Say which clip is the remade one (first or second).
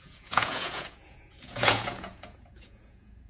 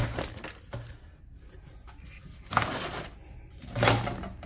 first